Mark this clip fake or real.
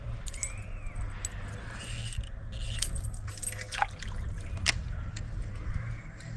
real